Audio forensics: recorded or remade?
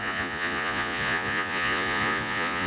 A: remade